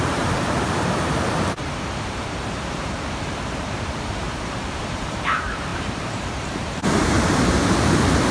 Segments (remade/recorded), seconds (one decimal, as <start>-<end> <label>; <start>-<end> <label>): 0.0-8.3 remade